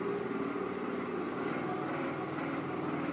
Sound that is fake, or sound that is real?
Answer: real